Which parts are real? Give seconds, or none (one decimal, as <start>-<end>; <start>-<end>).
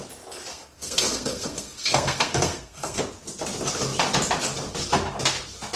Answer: 0.0-0.5; 3.0-5.8